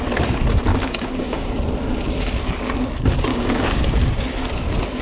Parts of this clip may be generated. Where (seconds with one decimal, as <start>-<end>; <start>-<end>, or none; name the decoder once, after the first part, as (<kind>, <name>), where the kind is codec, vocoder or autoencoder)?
0.7-1.6 (codec, DAC); 3.3-3.8

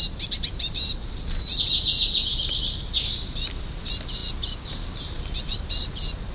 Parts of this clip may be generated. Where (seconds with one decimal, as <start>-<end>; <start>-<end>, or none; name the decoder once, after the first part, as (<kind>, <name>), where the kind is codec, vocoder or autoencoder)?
none

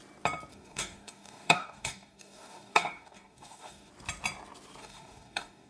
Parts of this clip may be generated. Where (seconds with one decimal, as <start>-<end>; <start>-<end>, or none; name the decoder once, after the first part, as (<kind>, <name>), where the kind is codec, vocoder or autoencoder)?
0.5-3.9 (codec, DAC); 4.8-5.7

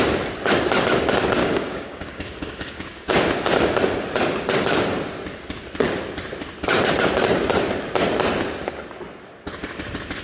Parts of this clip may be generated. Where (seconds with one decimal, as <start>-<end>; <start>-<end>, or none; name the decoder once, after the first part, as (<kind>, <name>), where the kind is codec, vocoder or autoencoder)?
1.4-3.0 (codec, DAC)

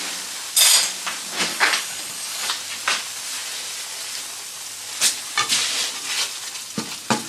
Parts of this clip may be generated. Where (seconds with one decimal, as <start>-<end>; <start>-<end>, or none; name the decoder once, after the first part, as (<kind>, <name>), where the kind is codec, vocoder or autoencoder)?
1.5-2.5 (codec, DAC)

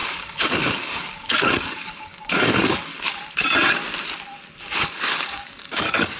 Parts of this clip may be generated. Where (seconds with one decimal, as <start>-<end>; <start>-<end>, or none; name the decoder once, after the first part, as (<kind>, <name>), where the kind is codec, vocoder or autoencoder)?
0.0-2.9 (codec, DAC); 4.6-6.2

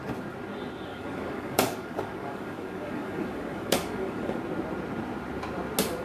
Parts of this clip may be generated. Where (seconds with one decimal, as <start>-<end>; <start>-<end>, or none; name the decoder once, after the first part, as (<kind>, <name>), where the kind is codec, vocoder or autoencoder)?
0.9-4.4 (codec, DAC)

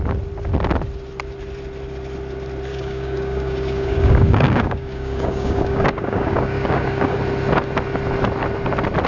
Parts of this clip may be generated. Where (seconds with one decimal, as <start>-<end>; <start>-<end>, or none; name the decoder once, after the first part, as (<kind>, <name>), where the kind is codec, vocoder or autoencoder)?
2.7-7.2 (codec, DAC)